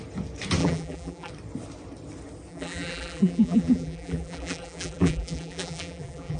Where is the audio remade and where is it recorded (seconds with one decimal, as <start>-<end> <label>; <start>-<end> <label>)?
0.0-0.6 recorded; 0.6-1.3 remade; 1.3-2.5 recorded; 2.5-6.4 remade